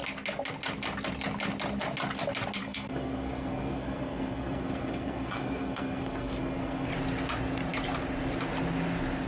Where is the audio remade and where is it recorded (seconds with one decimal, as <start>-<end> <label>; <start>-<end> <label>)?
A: 0.0-2.6 recorded; 2.6-6.9 remade; 6.9-9.3 recorded